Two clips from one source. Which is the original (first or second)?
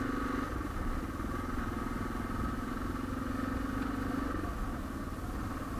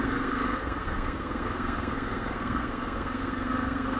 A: first